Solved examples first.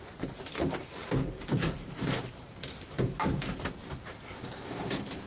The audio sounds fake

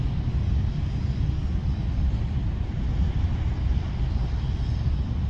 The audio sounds real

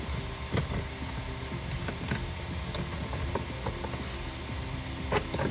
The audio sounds real